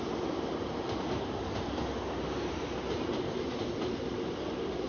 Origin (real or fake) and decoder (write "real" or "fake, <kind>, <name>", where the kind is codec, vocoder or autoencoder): real